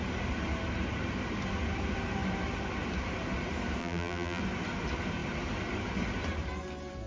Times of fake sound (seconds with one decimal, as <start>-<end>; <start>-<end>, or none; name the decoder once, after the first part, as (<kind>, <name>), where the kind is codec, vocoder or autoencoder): 3.8-4.4 (vocoder, BigVGAN v2)